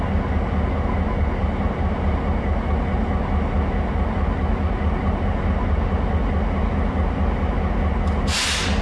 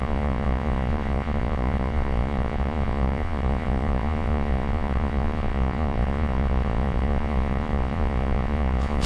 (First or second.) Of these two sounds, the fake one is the second